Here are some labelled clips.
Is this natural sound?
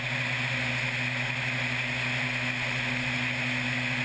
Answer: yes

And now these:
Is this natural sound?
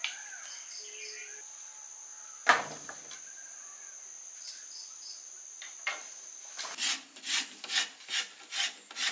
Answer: yes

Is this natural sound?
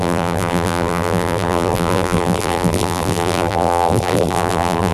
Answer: no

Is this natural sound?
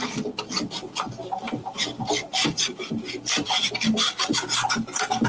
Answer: yes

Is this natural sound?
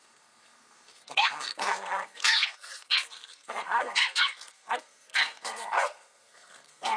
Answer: no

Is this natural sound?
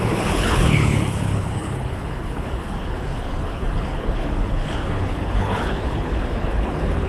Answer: no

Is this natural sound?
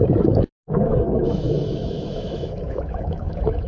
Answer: no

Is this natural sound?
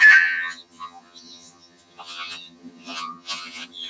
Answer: no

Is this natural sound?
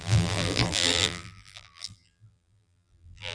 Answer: no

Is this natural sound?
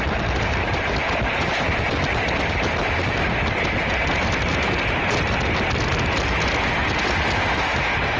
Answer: yes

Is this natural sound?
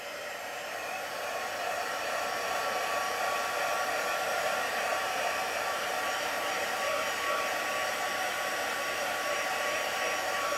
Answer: no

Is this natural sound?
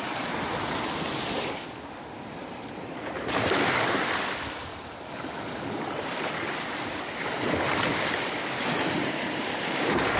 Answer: yes